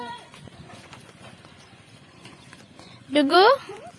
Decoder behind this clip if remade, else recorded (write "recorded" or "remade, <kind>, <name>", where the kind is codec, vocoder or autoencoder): remade, vocoder, Vocos